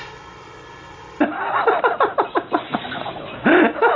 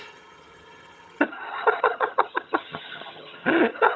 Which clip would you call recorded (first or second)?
first